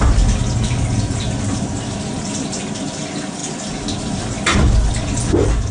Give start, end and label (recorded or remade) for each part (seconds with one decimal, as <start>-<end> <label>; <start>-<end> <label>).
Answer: 0.0-5.7 recorded